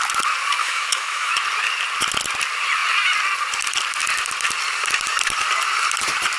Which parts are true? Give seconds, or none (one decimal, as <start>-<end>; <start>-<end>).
0.0-0.6; 1.3-6.4